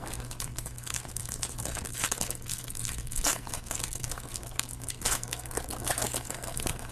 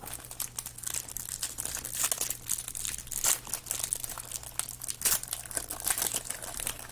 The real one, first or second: second